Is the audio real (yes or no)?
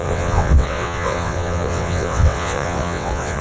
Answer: no